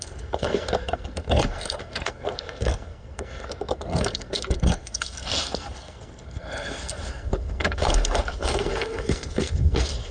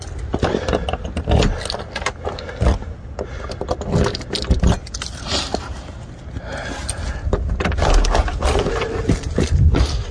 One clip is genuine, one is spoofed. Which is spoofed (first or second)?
first